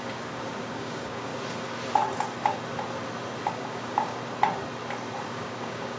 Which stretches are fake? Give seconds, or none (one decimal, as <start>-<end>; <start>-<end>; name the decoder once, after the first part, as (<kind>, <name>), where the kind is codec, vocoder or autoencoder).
0.0-1.3 (codec, DAC); 3.5-4.2; 5.3-6.0